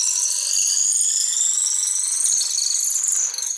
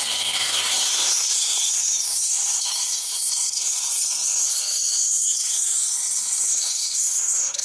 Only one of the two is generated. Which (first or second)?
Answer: second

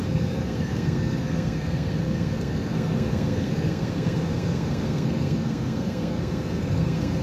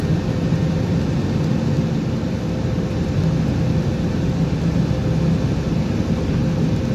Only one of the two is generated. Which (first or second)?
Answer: first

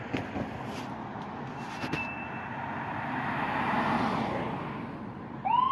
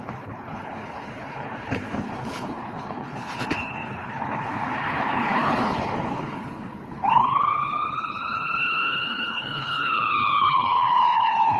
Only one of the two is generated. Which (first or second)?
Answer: second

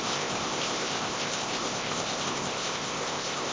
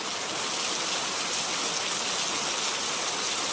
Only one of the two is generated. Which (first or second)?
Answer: first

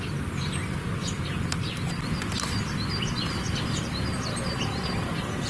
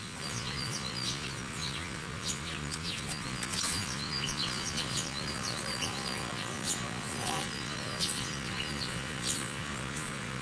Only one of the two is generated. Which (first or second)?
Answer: second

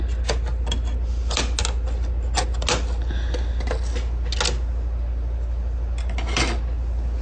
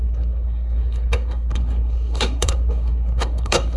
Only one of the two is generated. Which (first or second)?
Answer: second